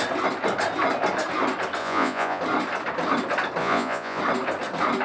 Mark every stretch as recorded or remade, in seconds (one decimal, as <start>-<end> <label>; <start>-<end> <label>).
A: 0.0-1.8 recorded; 1.8-2.4 remade; 2.4-3.6 recorded; 3.6-4.2 remade; 4.2-5.0 recorded